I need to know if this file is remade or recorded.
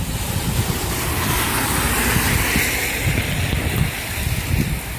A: recorded